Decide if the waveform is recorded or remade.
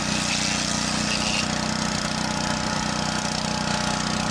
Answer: recorded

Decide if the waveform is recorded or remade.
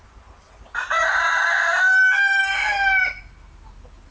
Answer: recorded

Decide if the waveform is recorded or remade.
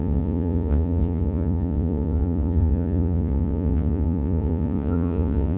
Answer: remade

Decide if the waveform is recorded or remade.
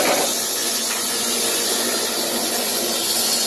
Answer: remade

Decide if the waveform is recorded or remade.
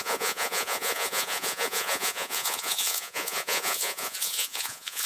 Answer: remade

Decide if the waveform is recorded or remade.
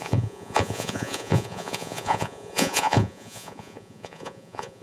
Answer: remade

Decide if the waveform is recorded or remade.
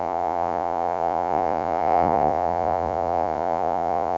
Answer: remade